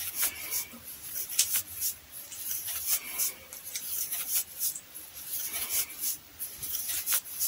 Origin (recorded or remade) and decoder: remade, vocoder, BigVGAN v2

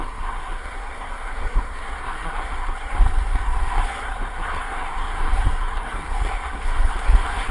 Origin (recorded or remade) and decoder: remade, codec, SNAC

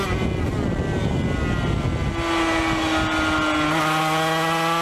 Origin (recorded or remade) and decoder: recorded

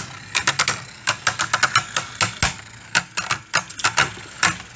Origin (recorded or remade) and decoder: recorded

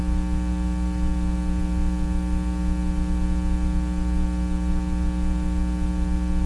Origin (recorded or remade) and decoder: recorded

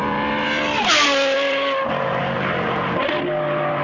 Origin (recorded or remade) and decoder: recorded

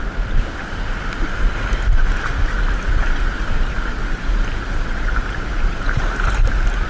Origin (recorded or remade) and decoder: recorded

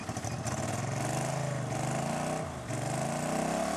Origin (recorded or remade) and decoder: recorded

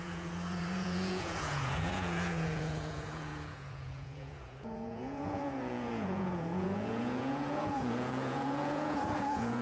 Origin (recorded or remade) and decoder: remade, vocoder, Vocos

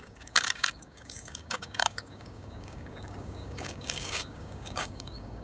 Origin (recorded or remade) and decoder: remade, codec, DAC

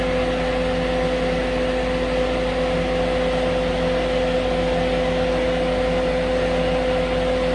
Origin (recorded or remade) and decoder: recorded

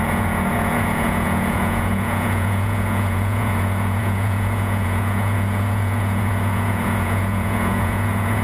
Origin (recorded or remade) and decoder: remade, vocoder, Vocos